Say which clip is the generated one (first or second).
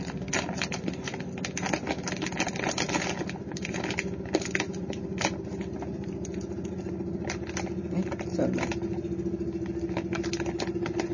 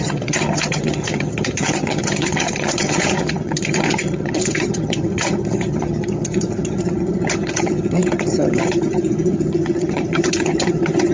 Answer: second